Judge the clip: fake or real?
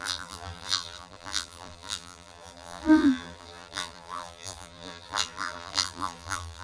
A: fake